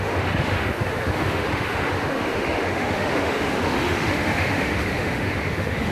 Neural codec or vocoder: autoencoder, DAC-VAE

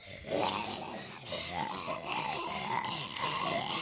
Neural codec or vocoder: none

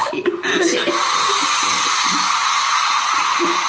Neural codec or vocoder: none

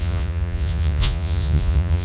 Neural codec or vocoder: vocoder, Vocos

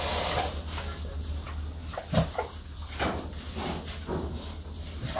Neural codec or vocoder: none